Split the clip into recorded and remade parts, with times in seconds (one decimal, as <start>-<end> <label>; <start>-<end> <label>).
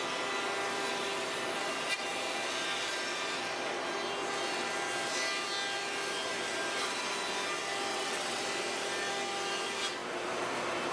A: 0.0-7.9 recorded; 7.9-8.4 remade; 8.4-10.9 recorded